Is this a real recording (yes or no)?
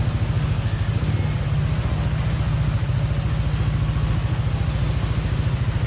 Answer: yes